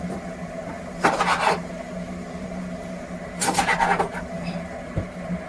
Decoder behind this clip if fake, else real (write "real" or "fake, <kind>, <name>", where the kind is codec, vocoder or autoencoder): real